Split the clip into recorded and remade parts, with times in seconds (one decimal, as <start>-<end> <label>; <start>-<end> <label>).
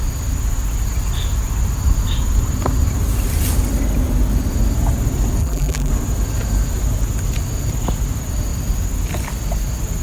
0.0-5.4 recorded; 5.4-5.9 remade; 5.9-10.0 recorded